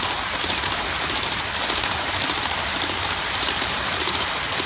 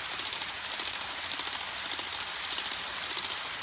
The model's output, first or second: first